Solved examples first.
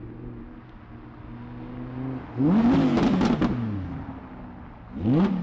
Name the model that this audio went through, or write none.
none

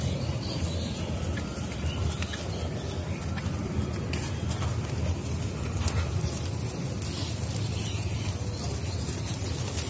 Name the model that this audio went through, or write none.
none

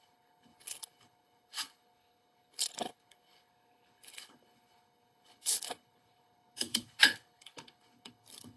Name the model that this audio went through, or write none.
codec, HILCodec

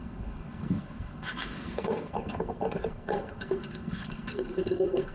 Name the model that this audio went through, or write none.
codec, SNAC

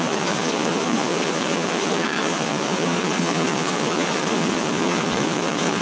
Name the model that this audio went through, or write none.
vocoder, Vocos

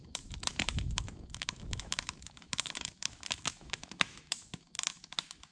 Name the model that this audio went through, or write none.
autoencoder, DAC-VAE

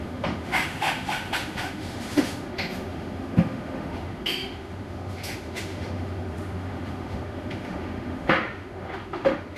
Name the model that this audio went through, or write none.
autoencoder, DAC-VAE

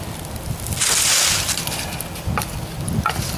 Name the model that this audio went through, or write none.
none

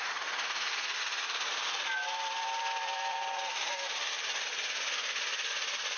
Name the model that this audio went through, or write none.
vocoder, BigVGAN v2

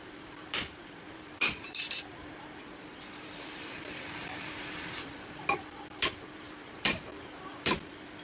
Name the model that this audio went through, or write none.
vocoder, BigVGAN v2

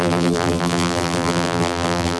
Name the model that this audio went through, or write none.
vocoder, BigVGAN v2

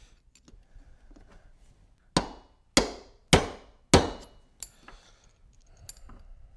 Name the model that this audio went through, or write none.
none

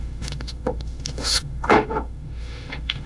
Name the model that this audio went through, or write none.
autoencoder, DAC-VAE